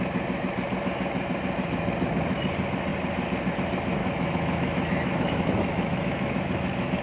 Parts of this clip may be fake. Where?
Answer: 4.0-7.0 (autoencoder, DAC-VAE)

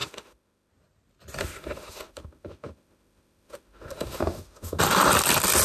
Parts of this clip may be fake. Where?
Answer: 0.0-0.7 (autoencoder, DAC-VAE); 1.4-4.8

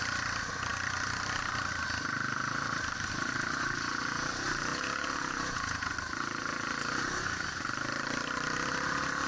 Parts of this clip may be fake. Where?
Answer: 4.7-5.9 (vocoder, Vocos)

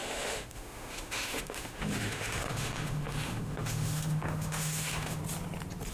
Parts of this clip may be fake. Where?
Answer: 0.0-5.2 (autoencoder, DAC-VAE)

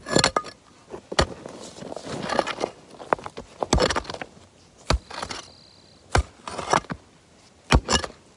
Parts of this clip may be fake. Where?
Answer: none

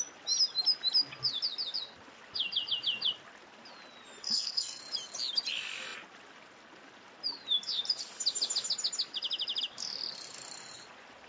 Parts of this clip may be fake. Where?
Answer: 4.2-4.8 (codec, SNAC)

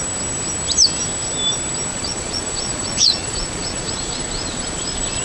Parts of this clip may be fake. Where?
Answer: 1.9-5.2 (vocoder, Vocos)

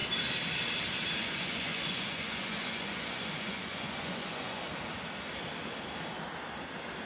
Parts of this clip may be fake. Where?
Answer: 1.2-4.6 (vocoder, Vocos)